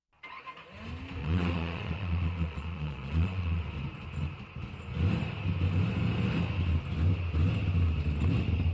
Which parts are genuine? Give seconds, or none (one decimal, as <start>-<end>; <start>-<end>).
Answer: 0.0-1.2; 3.6-8.7